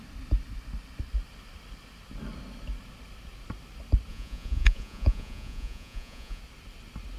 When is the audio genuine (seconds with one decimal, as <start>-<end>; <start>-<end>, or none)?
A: 0.0-4.1; 6.4-7.2